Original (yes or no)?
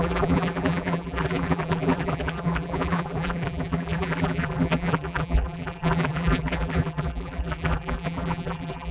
no